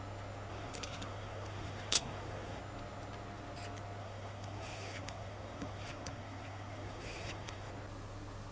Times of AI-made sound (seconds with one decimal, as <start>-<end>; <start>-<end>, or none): 0.5-2.6; 4.0-7.7